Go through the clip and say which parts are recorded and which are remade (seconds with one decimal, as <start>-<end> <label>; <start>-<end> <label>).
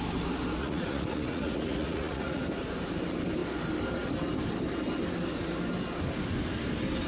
0.0-0.6 recorded; 0.6-2.4 remade; 2.4-7.1 recorded